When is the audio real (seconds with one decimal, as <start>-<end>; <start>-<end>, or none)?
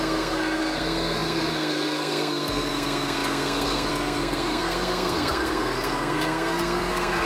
none